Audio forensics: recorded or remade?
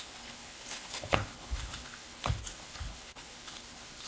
remade